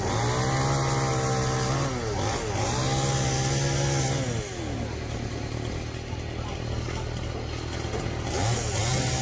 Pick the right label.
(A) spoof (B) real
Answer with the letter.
B